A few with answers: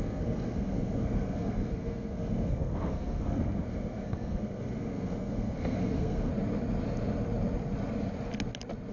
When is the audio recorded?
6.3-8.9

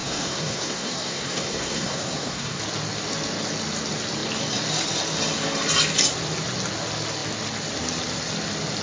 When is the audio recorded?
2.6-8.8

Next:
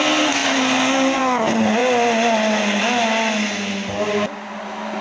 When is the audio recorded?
0.0-5.0

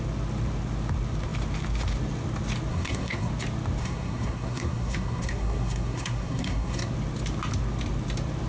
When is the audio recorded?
0.0-2.7; 3.3-3.8; 6.9-8.5